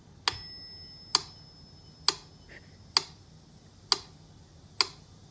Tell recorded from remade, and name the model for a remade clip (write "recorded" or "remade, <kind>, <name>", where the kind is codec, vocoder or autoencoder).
recorded